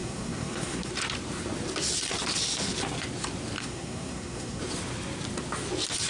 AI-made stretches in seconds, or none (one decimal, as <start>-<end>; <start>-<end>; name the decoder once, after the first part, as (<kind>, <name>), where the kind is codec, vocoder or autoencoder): 0.0-0.9 (codec, SNAC); 3.6-4.6